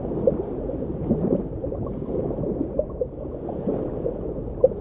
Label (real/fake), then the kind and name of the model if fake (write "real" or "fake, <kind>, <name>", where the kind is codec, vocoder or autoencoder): fake, vocoder, BigVGAN v2